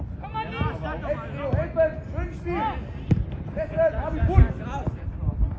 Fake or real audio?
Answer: real